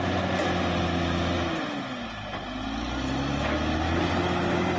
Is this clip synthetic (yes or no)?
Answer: no